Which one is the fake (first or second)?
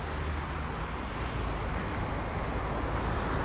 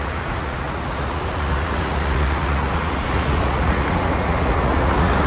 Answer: second